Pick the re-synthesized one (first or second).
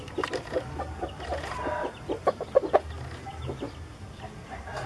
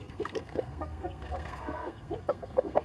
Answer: second